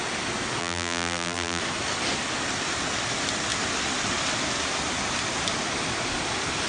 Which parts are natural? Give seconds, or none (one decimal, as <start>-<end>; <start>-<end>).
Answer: 0.0-0.6; 1.6-6.7